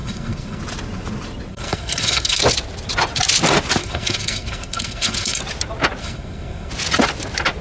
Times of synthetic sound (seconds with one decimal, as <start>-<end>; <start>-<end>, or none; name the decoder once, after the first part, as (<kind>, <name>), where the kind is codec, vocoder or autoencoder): 0.0-0.6 (codec, SNAC); 1.5-2.4; 3.8-5.4; 6.0-6.7